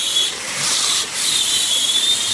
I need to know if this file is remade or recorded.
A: remade